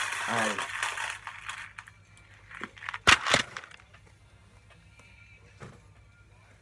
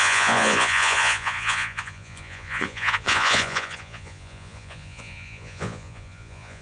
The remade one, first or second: second